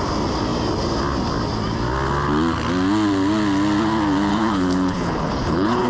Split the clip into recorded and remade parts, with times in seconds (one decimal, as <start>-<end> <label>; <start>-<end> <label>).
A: 0.0-4.3 recorded; 4.3-5.9 remade

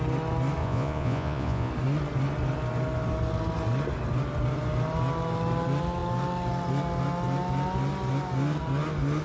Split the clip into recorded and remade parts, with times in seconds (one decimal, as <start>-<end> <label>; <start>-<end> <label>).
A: 0.0-0.6 recorded; 0.6-1.7 remade; 1.7-9.2 recorded

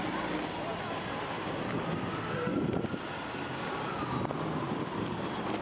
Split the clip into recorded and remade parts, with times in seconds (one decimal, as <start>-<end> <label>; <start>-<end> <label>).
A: 0.0-5.6 recorded

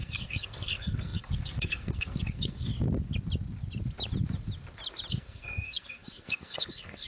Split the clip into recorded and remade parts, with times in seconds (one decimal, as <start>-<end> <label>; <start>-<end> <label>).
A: 0.0-2.7 remade; 2.7-5.1 recorded; 5.1-7.1 remade

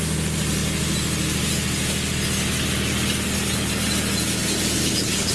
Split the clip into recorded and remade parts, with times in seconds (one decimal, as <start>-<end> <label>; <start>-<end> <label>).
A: 0.0-4.8 recorded; 4.8-5.3 remade

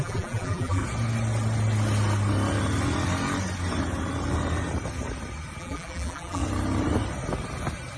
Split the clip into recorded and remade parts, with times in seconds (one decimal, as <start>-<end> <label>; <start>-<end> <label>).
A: 0.0-0.8 remade; 0.8-5.6 recorded; 5.6-6.4 remade; 6.4-8.0 recorded